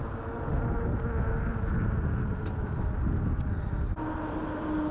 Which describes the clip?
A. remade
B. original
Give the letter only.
B